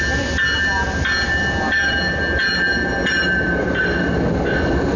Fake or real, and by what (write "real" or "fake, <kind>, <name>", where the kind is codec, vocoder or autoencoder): real